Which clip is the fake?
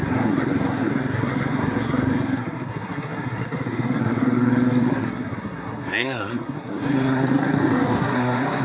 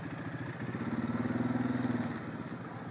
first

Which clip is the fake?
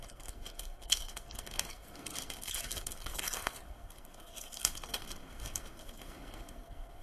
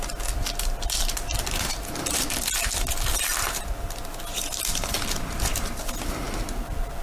first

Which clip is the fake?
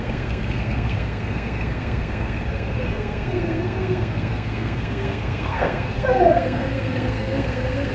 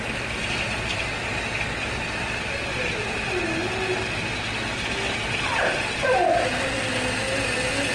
first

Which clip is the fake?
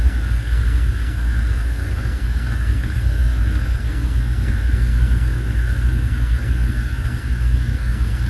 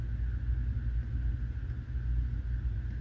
first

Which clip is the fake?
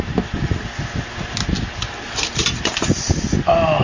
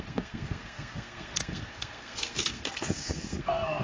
second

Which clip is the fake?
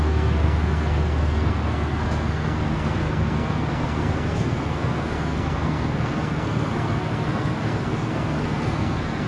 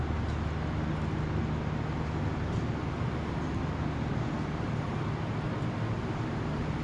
first